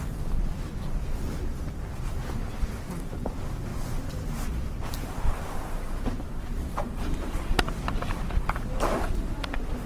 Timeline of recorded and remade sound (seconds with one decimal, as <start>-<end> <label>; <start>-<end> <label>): 0.0-9.9 remade